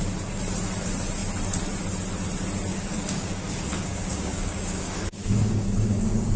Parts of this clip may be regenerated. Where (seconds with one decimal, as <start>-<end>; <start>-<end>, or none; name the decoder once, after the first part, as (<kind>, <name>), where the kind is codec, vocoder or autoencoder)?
2.7-6.4 (codec, DAC)